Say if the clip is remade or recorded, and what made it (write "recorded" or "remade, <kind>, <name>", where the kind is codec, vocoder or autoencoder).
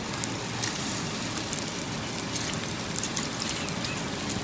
recorded